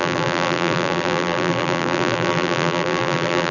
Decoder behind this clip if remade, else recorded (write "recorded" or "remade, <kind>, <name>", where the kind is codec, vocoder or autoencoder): remade, vocoder, BigVGAN v2